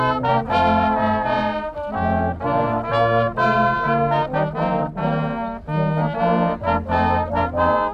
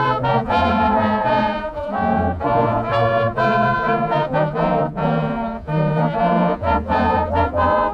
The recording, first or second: first